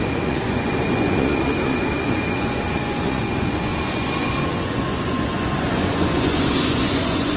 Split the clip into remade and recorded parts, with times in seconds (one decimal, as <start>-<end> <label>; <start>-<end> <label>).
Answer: 0.0-7.4 remade